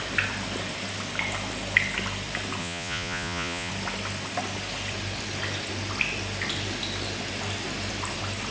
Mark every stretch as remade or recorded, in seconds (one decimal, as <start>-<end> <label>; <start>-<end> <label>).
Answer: 0.0-2.6 recorded; 2.6-3.7 remade; 3.7-8.5 recorded

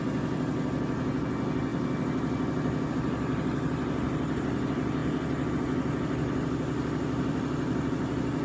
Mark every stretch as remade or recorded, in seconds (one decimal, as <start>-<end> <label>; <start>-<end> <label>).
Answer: 0.0-8.4 recorded

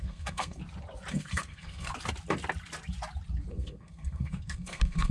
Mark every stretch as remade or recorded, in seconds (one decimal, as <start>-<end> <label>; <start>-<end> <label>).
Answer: 0.0-0.6 remade; 0.6-1.1 recorded; 1.1-1.9 remade; 1.9-3.5 recorded; 3.5-5.1 remade

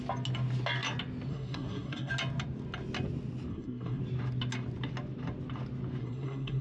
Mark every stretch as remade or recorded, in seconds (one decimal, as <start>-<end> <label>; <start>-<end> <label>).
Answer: 0.0-1.3 recorded; 1.3-2.1 remade; 2.1-3.5 recorded; 3.5-4.0 remade; 4.0-6.0 recorded; 6.0-6.6 remade

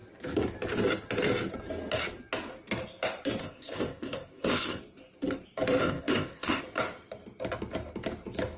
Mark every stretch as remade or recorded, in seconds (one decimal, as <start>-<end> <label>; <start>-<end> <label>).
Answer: 0.0-3.4 recorded; 3.4-4.8 remade; 4.8-5.8 recorded; 5.8-6.6 remade; 6.6-8.6 recorded

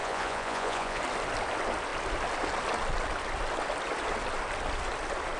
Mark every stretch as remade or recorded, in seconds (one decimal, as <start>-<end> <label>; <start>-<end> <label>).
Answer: 0.0-1.0 remade; 1.0-5.4 recorded

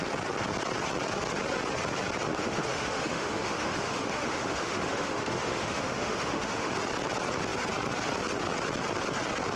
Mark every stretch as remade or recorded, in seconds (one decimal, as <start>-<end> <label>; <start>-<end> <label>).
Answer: 0.0-2.3 recorded; 2.3-6.7 remade; 6.7-9.6 recorded

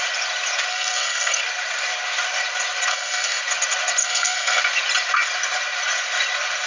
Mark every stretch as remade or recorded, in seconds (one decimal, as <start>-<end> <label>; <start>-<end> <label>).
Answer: 0.0-0.7 recorded; 0.7-1.4 remade; 1.4-2.9 recorded; 2.9-3.4 remade; 3.4-4.0 recorded; 4.0-4.6 remade; 4.6-6.7 recorded